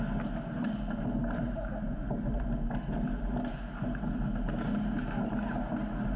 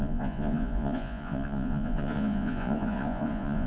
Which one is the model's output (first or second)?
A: second